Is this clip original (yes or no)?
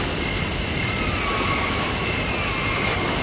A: yes